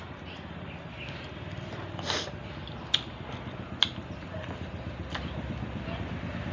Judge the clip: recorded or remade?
remade